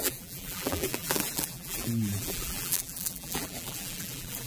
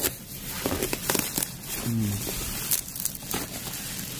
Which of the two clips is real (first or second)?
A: second